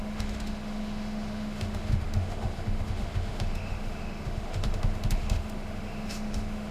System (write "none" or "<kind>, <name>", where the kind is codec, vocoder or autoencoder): autoencoder, DAC-VAE